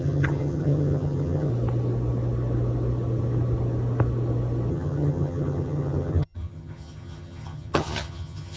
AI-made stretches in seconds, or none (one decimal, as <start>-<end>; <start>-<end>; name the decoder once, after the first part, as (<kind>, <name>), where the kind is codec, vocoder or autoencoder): 0.0-1.5 (vocoder, HiFi-GAN); 4.7-8.6